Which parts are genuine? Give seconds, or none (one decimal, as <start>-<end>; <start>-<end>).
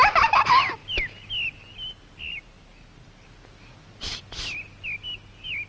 0.0-5.7